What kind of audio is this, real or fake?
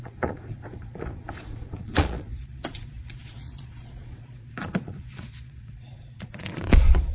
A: fake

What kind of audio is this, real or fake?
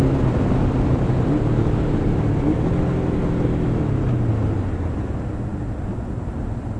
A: real